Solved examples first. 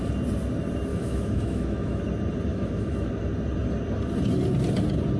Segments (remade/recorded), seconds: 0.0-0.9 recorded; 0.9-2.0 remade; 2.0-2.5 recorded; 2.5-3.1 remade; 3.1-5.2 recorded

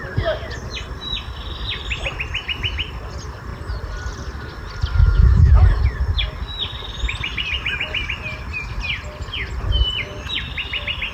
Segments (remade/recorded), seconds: 0.0-5.0 recorded; 5.0-5.6 remade; 5.6-11.1 recorded

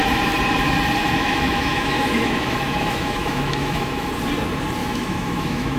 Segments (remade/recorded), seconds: 0.0-1.0 recorded; 1.0-4.1 remade; 4.1-4.8 recorded; 4.8-5.8 remade

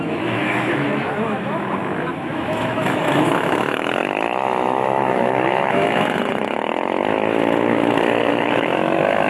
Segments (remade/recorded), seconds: 0.0-9.3 remade

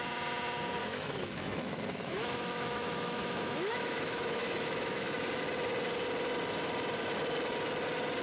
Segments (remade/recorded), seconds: 0.0-0.8 recorded; 0.8-5.1 remade; 5.1-8.2 recorded